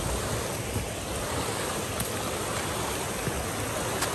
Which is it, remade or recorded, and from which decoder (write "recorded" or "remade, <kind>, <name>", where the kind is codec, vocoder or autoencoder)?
recorded